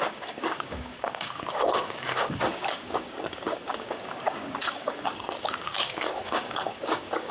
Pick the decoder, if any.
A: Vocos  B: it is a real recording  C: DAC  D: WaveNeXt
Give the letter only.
C